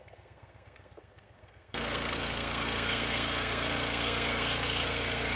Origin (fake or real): fake